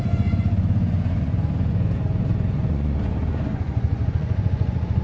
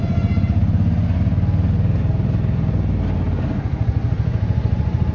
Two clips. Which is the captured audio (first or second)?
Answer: second